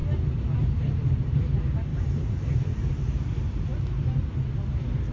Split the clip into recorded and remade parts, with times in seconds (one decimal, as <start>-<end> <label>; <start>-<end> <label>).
0.0-0.7 recorded; 0.7-3.7 remade; 3.7-5.1 recorded